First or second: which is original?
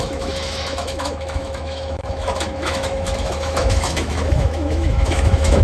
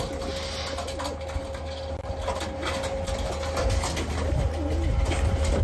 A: second